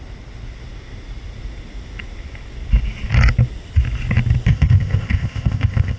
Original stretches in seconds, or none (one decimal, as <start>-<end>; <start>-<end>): 0.0-4.5

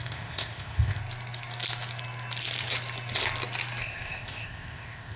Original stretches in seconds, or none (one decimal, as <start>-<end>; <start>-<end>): 1.0-3.8

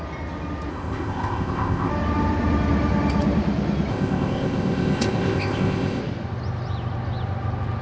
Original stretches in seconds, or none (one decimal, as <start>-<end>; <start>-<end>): 0.0-0.7; 1.9-3.9; 6.0-7.8